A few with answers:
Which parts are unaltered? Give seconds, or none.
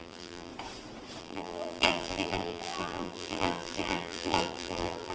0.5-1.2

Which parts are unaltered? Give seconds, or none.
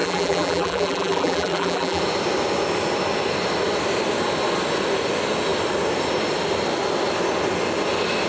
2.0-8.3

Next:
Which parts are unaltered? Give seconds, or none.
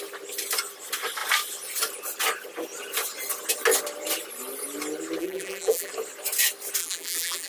0.0-5.2; 5.9-6.8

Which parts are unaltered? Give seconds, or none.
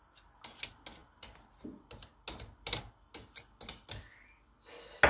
0.0-5.1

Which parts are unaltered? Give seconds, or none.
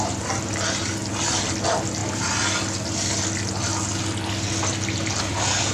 1.0-1.6; 2.0-5.7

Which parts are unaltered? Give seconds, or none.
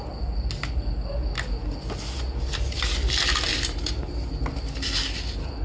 0.0-3.5; 4.1-5.6